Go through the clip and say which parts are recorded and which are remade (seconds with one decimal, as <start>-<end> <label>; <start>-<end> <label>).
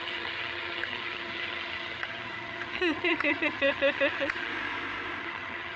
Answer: 0.0-4.5 remade; 4.5-5.2 recorded; 5.2-5.8 remade